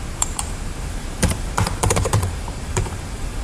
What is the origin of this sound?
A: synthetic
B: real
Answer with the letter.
A